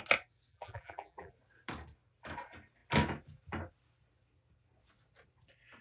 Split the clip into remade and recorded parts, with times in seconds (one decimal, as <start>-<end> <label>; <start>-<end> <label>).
0.0-0.5 recorded; 0.5-1.3 remade; 1.3-5.8 recorded